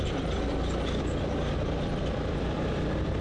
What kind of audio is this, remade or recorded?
remade